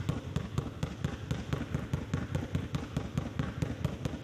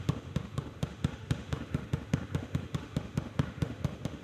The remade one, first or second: second